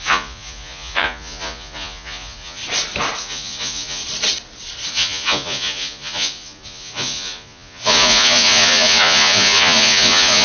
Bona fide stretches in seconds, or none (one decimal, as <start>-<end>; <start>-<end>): 2.6-3.2; 4.0-4.9